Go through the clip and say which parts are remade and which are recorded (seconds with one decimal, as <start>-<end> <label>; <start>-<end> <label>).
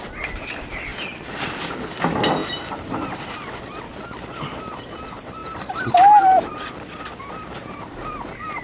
0.0-0.9 recorded; 0.9-1.6 remade; 1.6-5.4 recorded; 5.4-8.6 remade